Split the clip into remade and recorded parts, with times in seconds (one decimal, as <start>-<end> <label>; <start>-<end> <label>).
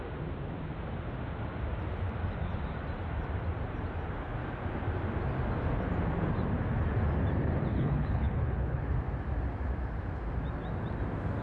0.0-7.7 recorded; 7.7-8.8 remade; 8.8-11.4 recorded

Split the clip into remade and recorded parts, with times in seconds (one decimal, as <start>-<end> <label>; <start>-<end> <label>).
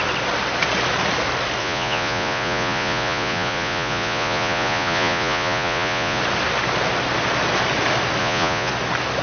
0.0-1.6 recorded; 1.6-6.2 remade; 6.2-8.2 recorded; 8.2-8.7 remade; 8.7-9.2 recorded